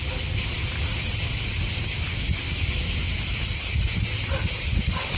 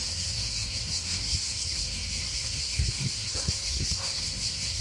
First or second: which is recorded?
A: first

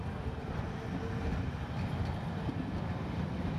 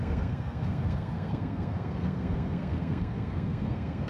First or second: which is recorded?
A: first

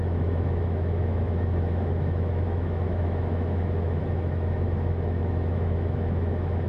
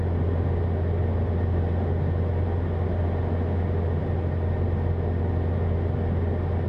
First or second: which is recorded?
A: second